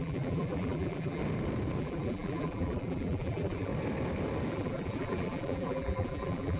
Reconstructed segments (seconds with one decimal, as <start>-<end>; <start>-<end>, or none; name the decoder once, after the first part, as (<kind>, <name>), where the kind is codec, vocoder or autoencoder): 0.0-1.2 (vocoder, BigVGAN v2); 1.8-3.7; 4.5-6.6